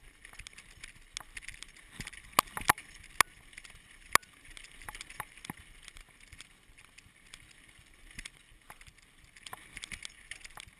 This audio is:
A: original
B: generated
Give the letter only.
A